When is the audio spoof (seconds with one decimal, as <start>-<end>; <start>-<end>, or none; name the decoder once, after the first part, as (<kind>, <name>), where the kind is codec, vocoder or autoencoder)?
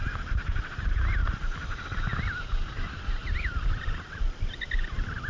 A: none